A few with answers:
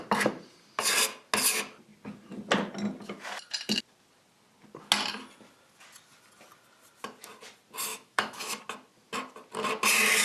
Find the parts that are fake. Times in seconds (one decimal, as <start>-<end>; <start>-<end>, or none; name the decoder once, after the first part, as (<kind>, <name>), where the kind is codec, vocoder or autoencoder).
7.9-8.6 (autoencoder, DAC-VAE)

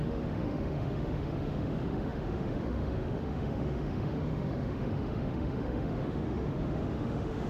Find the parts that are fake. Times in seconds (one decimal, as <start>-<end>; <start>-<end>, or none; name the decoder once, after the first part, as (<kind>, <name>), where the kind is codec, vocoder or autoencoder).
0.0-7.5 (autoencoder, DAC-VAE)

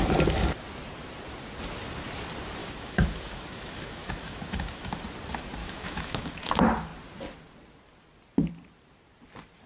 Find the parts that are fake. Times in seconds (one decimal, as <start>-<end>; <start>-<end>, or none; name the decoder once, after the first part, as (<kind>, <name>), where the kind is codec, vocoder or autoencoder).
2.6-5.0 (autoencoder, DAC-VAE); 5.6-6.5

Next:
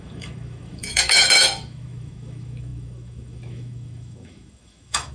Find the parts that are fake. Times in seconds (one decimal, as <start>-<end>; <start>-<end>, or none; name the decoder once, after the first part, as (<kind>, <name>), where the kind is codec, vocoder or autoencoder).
0.0-5.1 (autoencoder, DAC-VAE)